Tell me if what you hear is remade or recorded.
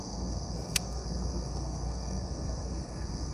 remade